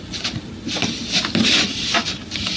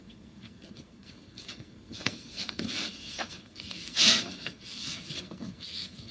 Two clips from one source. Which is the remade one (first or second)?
second